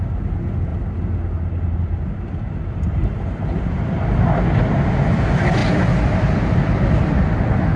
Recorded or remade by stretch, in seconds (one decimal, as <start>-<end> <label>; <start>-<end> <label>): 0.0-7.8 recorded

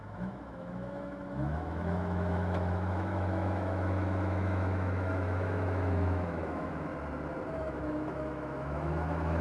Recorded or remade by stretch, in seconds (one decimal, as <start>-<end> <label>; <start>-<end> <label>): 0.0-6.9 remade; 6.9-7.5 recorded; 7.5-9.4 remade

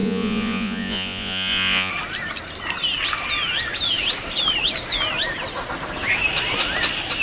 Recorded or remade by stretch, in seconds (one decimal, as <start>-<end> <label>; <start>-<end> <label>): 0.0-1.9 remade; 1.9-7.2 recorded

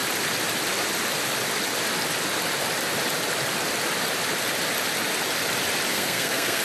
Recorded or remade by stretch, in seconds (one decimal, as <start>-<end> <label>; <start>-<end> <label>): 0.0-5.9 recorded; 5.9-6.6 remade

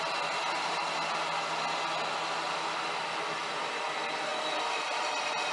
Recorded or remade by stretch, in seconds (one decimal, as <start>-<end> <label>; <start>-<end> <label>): 0.0-5.5 recorded